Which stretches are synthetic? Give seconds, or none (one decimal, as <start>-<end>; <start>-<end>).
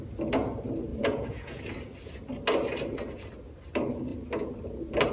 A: 0.9-1.6